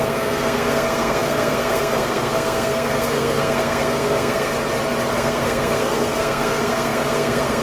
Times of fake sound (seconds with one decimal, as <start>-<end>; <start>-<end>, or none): 0.0-4.5; 5.1-7.6